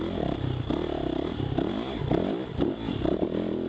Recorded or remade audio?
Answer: recorded